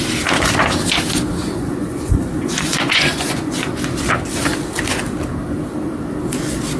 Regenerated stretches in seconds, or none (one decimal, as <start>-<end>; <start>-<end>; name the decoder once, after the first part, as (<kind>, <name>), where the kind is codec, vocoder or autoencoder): 1.4-3.7 (vocoder, Vocos)